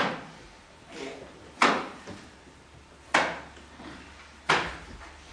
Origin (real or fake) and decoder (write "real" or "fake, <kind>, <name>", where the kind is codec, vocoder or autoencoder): real